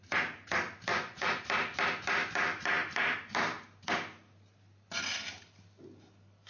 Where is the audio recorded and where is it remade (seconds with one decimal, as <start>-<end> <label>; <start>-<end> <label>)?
0.0-0.9 recorded; 0.9-1.4 remade; 1.4-6.5 recorded